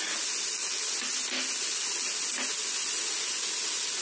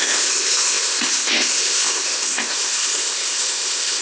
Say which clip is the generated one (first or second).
second